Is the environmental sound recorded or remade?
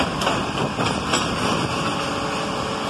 recorded